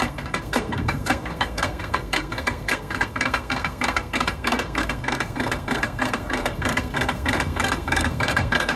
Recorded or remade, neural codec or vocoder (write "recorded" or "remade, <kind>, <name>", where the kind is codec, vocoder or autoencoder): remade, codec, SNAC